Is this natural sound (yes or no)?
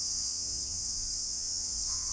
no